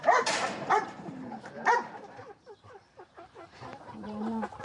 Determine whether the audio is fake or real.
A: fake